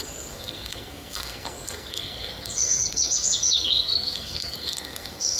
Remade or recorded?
remade